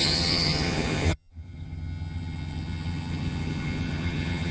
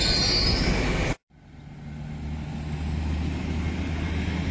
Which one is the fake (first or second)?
first